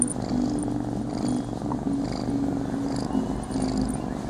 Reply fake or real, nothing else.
real